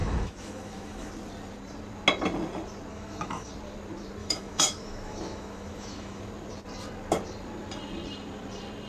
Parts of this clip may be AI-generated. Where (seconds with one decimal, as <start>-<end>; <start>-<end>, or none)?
0.0-1.1; 2.9-3.5; 4.2-6.2